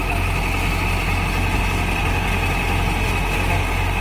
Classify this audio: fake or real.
real